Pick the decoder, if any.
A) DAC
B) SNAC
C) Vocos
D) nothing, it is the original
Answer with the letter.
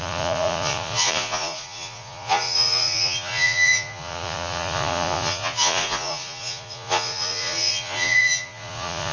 C